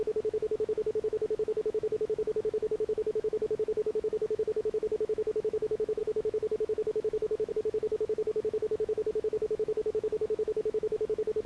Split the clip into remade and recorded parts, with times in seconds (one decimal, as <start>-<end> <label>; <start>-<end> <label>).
0.0-11.5 remade